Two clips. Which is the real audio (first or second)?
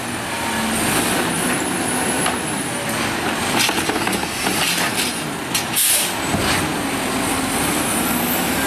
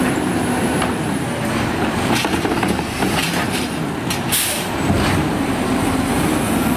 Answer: first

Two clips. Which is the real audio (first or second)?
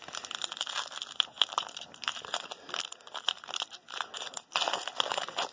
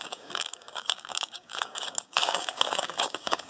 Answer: first